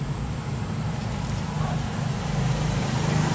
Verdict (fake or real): fake